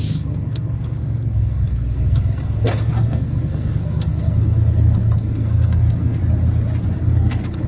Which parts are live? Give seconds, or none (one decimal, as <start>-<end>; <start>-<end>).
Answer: 6.2-7.0